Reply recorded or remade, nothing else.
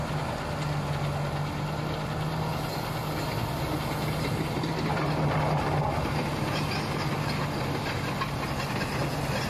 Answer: recorded